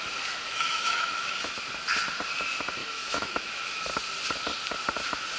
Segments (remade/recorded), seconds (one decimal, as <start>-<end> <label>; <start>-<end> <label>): 0.0-0.4 recorded; 0.4-1.6 remade; 1.6-2.8 recorded; 2.8-3.8 remade; 3.8-5.4 recorded